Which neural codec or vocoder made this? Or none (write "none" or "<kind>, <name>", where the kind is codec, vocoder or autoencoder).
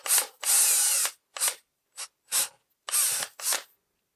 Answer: none